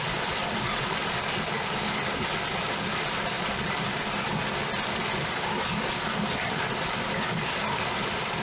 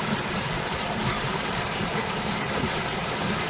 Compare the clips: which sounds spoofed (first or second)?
second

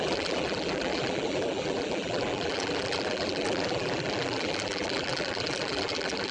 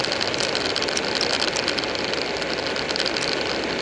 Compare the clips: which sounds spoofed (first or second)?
first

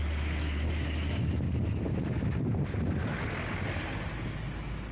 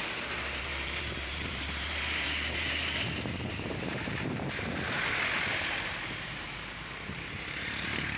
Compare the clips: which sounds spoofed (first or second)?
second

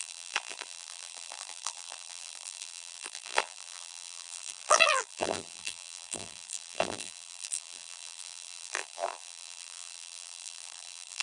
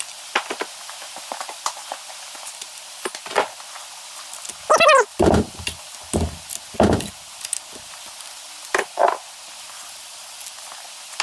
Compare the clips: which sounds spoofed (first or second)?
first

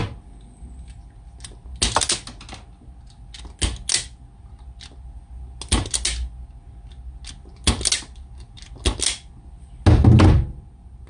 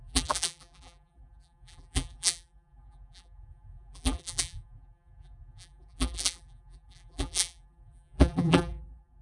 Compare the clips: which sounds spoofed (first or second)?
second